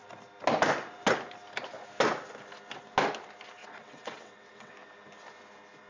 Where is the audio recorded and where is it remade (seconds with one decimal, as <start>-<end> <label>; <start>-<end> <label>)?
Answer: 0.0-3.6 recorded; 3.6-4.7 remade; 4.7-5.9 recorded